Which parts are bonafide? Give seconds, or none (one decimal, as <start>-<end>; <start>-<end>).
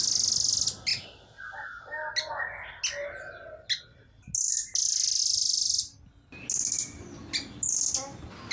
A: 0.0-8.5